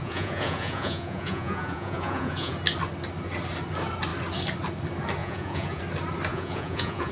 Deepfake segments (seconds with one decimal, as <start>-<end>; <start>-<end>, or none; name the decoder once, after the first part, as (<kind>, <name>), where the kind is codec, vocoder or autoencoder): 0.0-2.5 (vocoder, Vocos); 5.2-5.8; 6.3-7.1